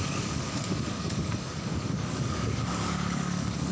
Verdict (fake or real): fake